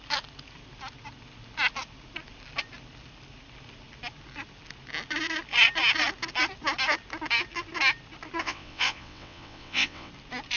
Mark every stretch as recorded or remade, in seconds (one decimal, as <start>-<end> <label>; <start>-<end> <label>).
0.0-8.4 recorded; 8.4-10.1 remade; 10.1-10.6 recorded